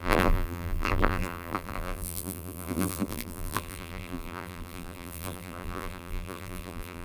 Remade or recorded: remade